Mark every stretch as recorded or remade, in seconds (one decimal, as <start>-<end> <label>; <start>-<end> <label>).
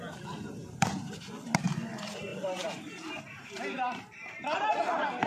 0.0-5.3 recorded